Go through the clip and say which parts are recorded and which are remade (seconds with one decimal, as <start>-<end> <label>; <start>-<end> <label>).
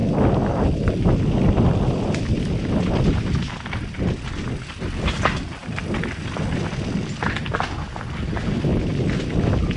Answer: 0.0-9.8 recorded